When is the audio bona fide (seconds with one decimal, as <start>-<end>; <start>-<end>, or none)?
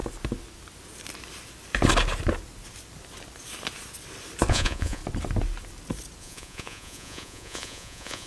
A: 0.0-4.5; 5.0-6.2